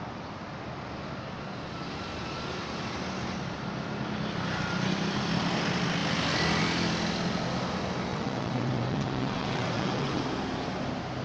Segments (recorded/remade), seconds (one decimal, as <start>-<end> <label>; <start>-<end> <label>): 0.0-8.1 recorded; 8.1-10.2 remade; 10.2-11.2 recorded

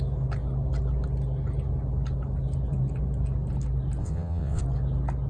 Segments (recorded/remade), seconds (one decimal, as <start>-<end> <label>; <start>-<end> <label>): 0.0-4.0 recorded; 4.0-4.6 remade; 4.6-5.3 recorded